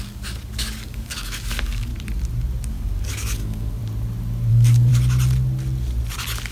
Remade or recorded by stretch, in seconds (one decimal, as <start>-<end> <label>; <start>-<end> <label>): 0.0-1.9 remade; 1.9-2.7 recorded; 2.7-3.8 remade; 3.8-4.5 recorded; 4.5-4.9 remade; 4.9-6.5 recorded